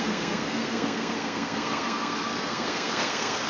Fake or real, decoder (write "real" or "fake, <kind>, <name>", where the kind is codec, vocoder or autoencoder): fake, codec, SNAC